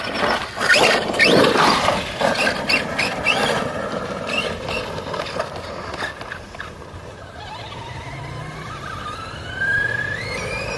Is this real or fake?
real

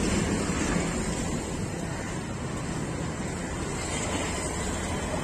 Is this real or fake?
real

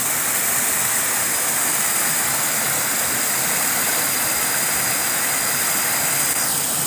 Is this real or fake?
real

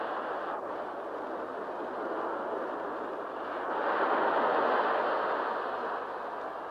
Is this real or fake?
real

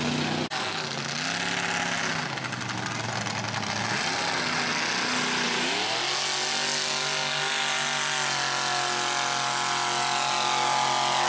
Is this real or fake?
real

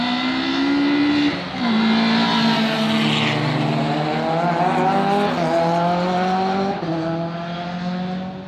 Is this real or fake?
real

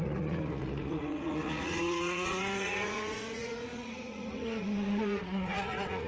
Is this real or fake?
fake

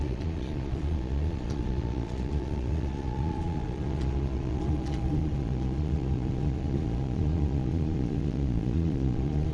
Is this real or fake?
fake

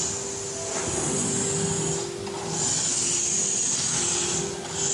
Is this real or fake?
real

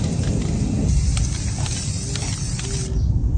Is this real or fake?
real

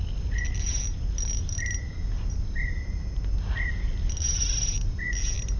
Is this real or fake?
real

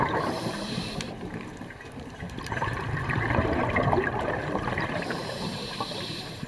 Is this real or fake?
fake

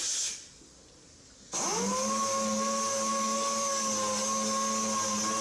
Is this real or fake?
real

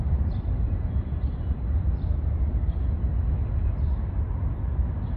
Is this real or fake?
real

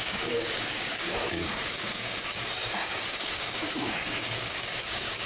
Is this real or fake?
fake